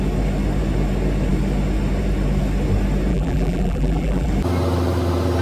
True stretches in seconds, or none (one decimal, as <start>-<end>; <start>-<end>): 0.0-3.1; 4.3-5.4